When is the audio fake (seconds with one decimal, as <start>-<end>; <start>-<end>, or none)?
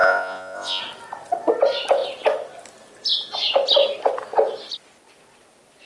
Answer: 0.0-0.8